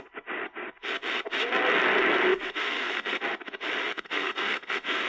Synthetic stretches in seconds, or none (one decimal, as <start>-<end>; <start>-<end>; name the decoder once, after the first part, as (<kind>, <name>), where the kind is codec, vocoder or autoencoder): 2.3-3.2 (codec, SNAC); 3.9-5.1